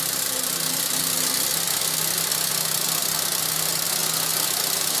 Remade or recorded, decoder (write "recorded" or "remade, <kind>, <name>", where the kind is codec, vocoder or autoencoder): recorded